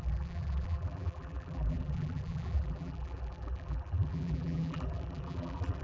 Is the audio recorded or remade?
remade